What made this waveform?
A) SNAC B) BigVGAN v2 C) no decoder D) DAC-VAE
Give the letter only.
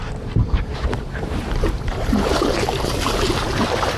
B